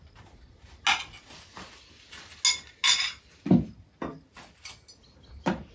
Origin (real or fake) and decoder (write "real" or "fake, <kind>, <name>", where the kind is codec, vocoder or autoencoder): real